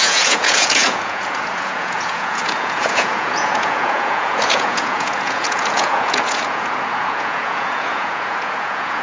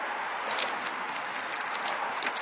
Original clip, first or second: second